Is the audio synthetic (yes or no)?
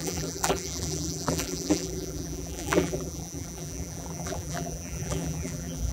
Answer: yes